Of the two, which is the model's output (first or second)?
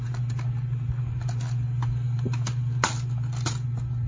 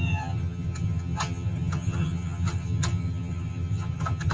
second